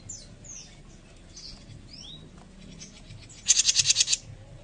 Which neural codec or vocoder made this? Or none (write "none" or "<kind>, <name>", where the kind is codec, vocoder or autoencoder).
none